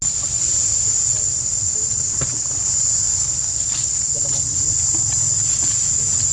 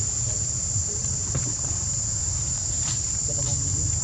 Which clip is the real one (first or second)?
first